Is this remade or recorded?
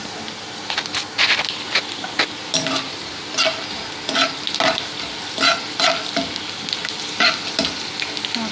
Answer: recorded